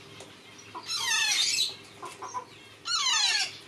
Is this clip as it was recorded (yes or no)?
yes